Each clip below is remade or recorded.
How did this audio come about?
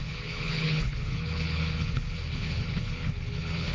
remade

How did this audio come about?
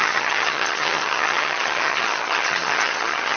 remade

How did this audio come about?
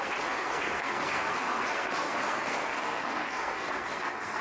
remade